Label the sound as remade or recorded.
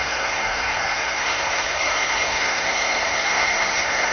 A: remade